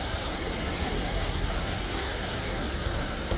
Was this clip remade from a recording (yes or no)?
yes